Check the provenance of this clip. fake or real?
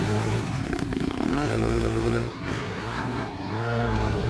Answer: fake